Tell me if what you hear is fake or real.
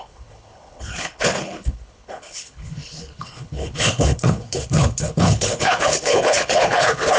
fake